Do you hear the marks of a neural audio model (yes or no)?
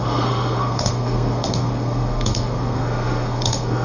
yes